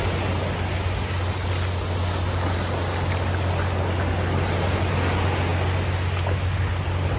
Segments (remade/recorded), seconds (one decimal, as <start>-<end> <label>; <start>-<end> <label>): 0.0-7.2 recorded